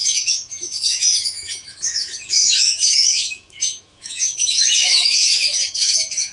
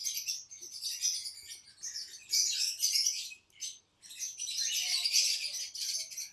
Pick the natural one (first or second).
second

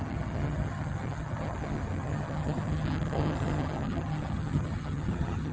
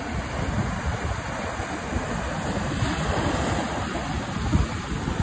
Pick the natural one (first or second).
second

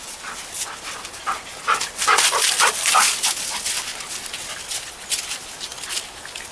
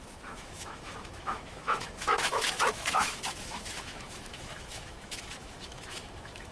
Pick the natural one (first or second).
first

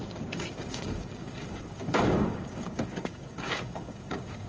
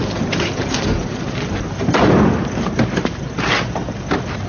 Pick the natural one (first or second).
second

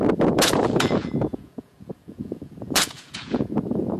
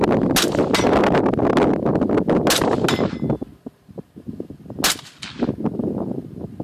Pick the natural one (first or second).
second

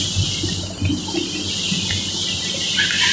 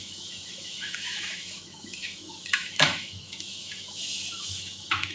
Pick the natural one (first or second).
first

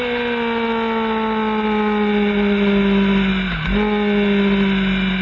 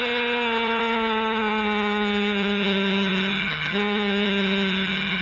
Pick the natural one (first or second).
first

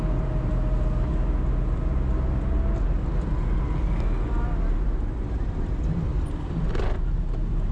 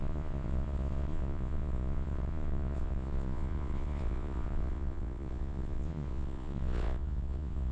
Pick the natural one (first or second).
first